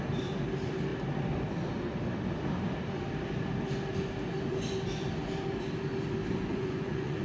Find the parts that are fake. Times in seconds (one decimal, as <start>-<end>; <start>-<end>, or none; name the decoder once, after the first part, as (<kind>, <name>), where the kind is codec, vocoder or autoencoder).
6.5-7.2 (vocoder, Vocos)